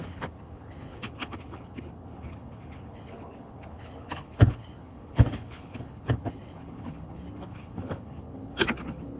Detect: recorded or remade remade